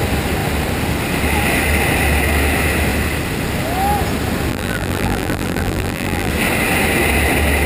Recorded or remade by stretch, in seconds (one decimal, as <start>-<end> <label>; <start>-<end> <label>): 0.0-4.5 recorded; 4.5-6.3 remade; 6.3-7.7 recorded